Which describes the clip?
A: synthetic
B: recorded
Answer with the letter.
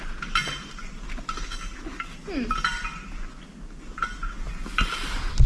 B